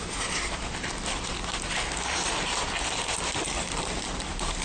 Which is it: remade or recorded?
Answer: remade